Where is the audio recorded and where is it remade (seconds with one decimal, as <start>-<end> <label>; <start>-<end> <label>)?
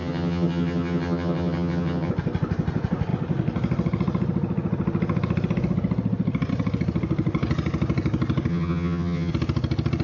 0.0-2.1 remade; 2.1-8.5 recorded; 8.5-9.3 remade; 9.3-10.0 recorded